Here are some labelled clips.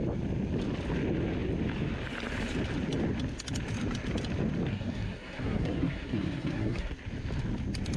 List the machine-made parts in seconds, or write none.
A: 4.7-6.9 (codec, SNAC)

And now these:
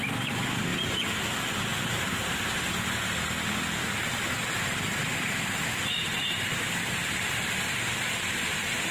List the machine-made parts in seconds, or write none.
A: none

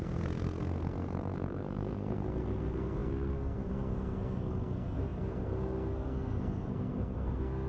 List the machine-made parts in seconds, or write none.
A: 0.0-7.7 (codec, SNAC)

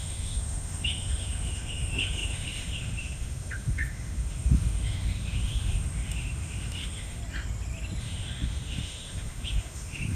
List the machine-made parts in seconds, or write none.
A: 0.0-7.2 (autoencoder, DAC-VAE); 8.0-10.2

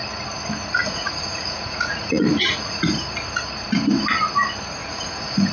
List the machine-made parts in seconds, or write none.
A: 0.8-2.8 (vocoder, Vocos); 4.8-5.5

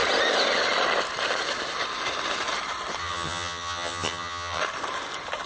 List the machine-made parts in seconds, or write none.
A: 3.0-4.6 (vocoder, HiFi-GAN)